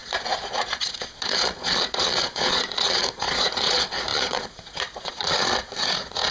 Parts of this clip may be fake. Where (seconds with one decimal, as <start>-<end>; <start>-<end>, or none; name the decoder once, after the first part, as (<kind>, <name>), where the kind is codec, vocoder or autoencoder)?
0.0-6.3 (vocoder, Vocos)